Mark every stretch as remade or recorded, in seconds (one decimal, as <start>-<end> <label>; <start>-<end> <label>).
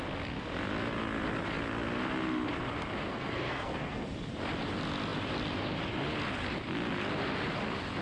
0.0-3.1 recorded; 3.1-4.0 remade; 4.0-8.0 recorded